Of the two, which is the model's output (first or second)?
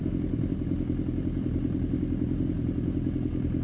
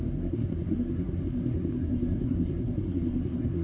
second